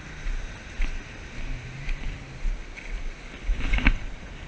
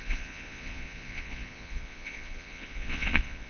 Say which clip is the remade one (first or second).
second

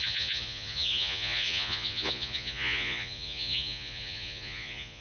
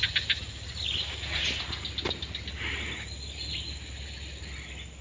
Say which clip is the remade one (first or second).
first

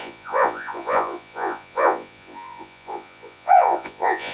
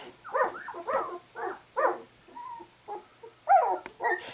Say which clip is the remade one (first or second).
first